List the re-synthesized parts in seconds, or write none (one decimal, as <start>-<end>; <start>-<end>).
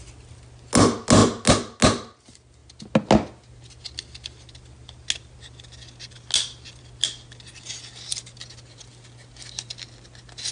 none